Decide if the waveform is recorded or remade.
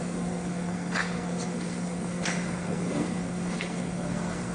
remade